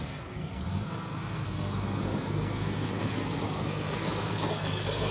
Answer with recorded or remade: remade